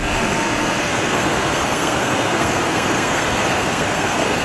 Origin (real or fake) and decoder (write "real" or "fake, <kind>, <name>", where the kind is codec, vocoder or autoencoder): fake, codec, SNAC